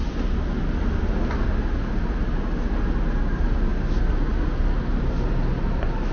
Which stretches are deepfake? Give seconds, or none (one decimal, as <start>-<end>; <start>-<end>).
none